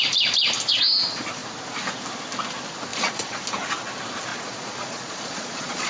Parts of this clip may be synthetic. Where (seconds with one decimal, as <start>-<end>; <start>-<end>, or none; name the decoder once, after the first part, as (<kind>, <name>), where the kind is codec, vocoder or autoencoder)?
2.9-3.4 (vocoder, Vocos); 4.3-5.9